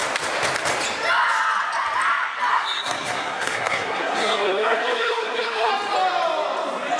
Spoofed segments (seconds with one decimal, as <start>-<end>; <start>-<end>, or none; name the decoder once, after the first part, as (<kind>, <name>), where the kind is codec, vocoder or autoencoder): 2.5-5.7 (codec, SNAC)